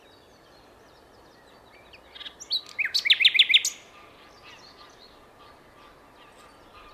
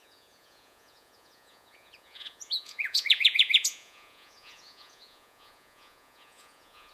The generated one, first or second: second